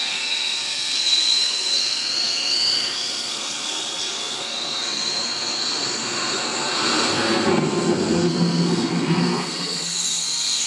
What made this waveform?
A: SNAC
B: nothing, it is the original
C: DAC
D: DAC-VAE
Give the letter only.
A